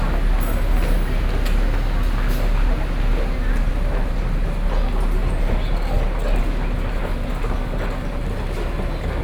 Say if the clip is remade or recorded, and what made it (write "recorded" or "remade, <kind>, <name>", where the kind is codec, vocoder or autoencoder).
recorded